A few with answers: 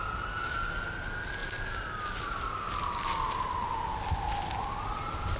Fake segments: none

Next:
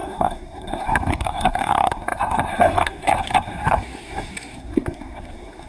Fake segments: 0.0-5.7 (codec, SNAC)

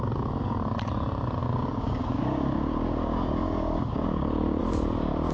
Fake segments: 1.4-4.6 (codec, DAC)

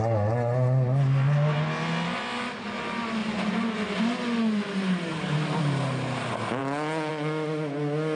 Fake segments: none

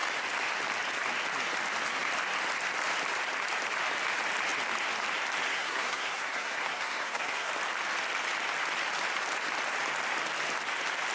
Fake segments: 5.5-7.5 (codec, SNAC)

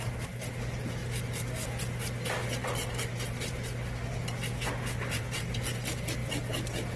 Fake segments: none

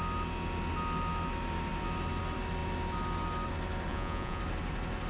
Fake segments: 3.9-4.4 (vocoder, Vocos)